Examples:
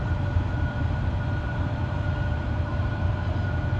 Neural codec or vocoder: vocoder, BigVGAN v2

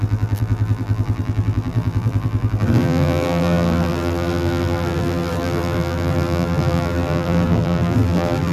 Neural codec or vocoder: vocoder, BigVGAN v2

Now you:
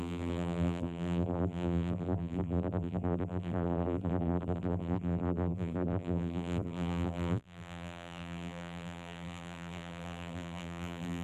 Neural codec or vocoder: vocoder, BigVGAN v2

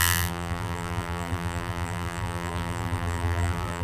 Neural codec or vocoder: vocoder, BigVGAN v2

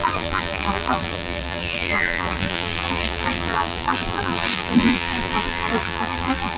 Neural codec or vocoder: vocoder, BigVGAN v2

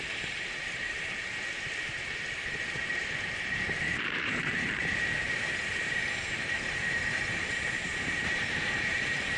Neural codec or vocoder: vocoder, BigVGAN v2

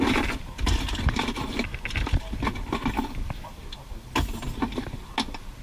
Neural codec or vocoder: none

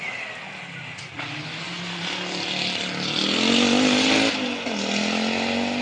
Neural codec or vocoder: none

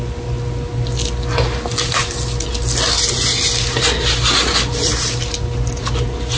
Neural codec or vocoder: none